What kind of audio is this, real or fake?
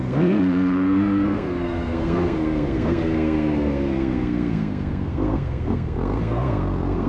fake